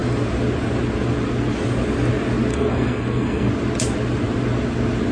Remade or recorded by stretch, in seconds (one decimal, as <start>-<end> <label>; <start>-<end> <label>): 0.0-2.5 recorded; 2.5-3.5 remade; 3.5-5.1 recorded

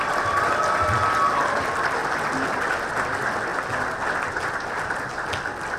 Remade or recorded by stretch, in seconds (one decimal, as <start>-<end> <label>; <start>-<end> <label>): 0.0-5.8 recorded